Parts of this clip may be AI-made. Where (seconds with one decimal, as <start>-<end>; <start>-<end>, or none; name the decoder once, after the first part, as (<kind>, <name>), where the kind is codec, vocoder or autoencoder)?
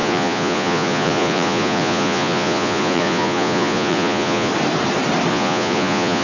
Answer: 0.0-4.5 (vocoder, Vocos); 5.3-6.2